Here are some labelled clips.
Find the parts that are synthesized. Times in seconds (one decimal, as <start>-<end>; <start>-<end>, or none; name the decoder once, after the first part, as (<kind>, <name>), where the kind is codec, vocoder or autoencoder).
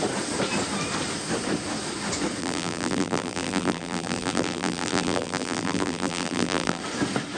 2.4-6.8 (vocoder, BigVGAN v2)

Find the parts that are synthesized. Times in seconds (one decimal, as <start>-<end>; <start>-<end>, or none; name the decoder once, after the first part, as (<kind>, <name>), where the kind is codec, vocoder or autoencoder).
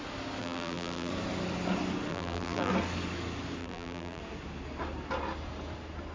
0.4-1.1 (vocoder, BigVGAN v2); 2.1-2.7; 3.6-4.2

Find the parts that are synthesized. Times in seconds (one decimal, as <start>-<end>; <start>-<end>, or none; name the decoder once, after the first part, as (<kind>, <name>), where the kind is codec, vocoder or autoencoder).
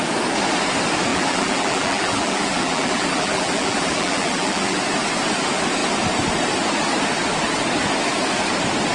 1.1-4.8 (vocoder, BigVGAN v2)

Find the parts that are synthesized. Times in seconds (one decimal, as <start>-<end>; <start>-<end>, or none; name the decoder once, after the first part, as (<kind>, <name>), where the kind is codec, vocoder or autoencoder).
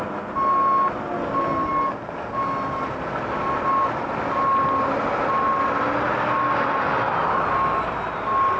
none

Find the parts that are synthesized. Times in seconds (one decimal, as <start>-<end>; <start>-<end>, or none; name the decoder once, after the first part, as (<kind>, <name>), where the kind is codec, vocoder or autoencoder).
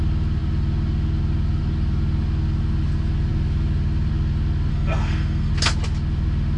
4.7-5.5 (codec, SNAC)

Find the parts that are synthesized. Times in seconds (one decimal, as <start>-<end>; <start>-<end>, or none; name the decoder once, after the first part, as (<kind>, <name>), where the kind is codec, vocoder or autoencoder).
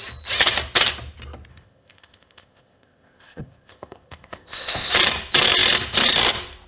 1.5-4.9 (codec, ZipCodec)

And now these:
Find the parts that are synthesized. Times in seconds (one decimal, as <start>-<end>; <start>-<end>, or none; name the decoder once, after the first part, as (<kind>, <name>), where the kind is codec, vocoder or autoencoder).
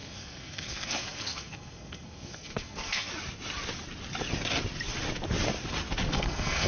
0.0-3.1 (codec, SNAC); 6.1-6.7